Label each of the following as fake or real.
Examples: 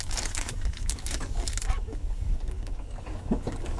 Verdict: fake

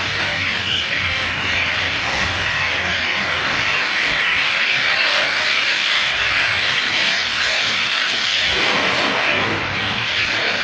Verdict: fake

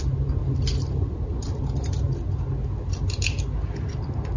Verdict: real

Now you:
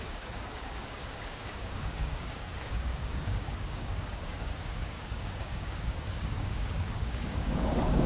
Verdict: fake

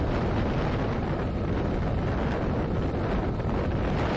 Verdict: real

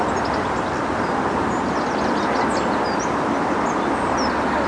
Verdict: real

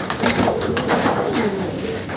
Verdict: fake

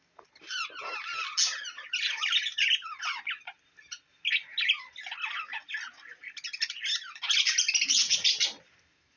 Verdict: real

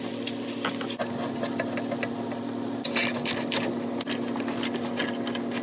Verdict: real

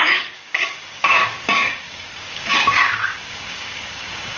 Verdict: fake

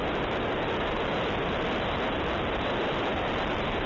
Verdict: real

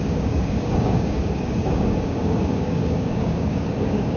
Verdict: fake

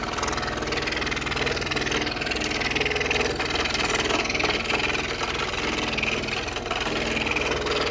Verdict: real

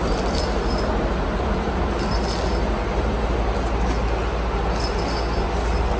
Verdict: real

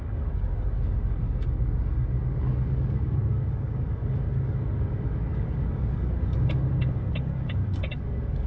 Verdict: fake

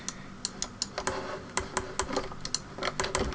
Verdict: real